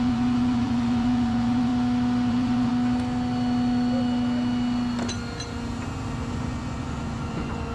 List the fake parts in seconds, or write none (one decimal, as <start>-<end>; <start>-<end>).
0.0-1.7; 2.3-2.7; 6.3-7.7